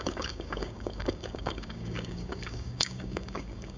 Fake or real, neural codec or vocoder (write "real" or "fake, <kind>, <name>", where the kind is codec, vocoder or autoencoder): fake, codec, DAC